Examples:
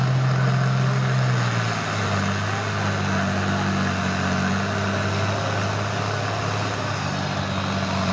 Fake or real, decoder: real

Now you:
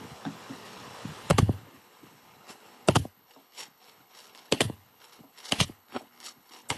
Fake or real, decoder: fake, codec, HILCodec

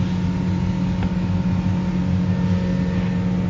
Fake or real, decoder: real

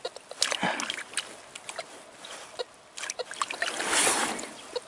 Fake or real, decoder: real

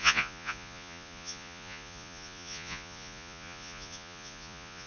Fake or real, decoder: fake, vocoder, Vocos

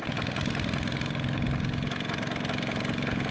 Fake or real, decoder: real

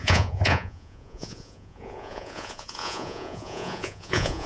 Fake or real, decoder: fake, vocoder, Vocos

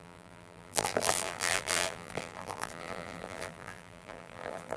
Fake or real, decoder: fake, vocoder, BigVGAN v2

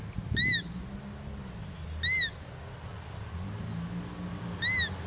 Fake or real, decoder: real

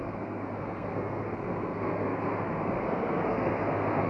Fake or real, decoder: fake, codec, SNAC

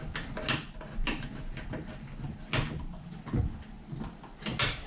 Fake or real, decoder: real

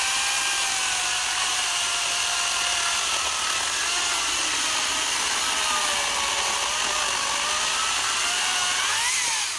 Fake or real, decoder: real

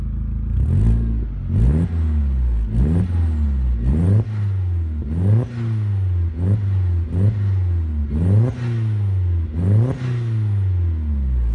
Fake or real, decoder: real